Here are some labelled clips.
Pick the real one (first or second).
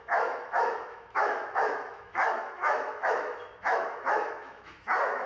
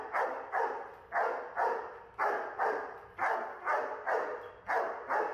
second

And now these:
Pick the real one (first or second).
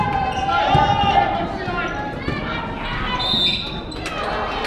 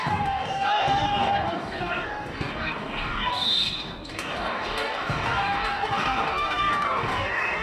first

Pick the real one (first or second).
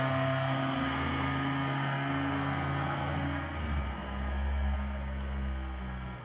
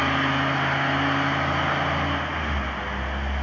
second